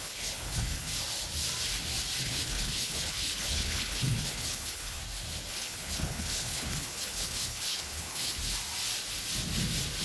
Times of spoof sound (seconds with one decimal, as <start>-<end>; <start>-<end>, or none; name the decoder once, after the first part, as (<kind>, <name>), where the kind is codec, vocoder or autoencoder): 0.0-0.9 (codec, HILCodec); 2.2-5.0; 5.5-8.4